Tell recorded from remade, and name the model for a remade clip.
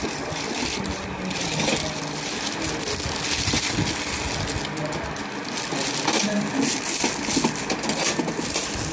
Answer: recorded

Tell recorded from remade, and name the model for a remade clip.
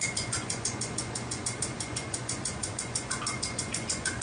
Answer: remade, vocoder, Vocos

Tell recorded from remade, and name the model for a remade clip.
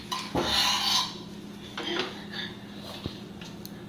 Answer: recorded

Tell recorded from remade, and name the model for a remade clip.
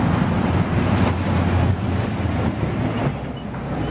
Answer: recorded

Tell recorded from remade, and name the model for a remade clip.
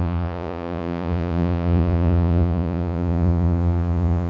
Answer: remade, vocoder, Vocos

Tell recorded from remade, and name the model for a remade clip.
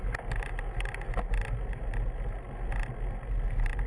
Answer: recorded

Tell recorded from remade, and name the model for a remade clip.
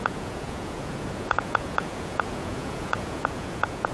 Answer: remade, vocoder, Vocos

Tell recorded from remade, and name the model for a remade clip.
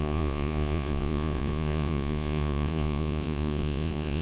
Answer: remade, vocoder, Vocos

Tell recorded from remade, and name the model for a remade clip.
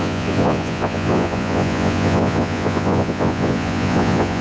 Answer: remade, vocoder, Vocos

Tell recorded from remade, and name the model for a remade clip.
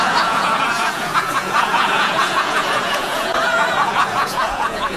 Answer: remade, vocoder, Vocos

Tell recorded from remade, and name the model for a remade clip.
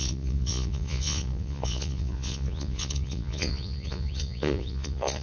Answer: remade, vocoder, Vocos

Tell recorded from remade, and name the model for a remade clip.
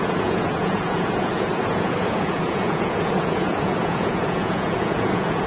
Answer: remade, vocoder, Vocos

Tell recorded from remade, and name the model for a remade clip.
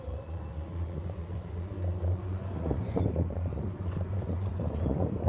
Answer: remade, vocoder, Vocos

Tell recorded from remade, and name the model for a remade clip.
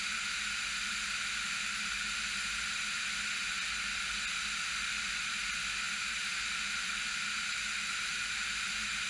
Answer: recorded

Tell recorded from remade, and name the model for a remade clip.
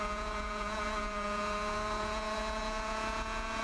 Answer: remade, vocoder, Vocos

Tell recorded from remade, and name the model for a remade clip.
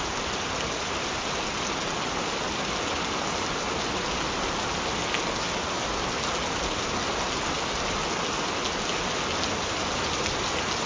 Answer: recorded